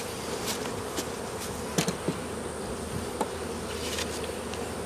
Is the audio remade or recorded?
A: recorded